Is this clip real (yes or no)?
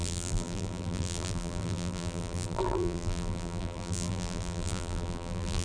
no